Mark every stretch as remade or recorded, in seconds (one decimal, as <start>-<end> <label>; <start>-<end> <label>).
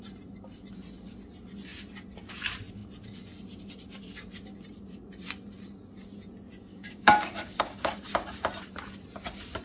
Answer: 0.0-6.7 recorded; 6.7-7.9 remade; 7.9-9.6 recorded